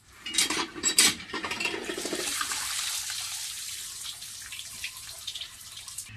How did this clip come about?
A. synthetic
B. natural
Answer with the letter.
A